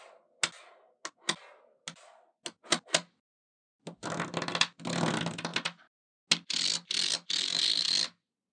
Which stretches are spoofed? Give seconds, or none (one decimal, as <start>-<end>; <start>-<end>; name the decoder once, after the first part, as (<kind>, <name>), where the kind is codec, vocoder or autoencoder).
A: none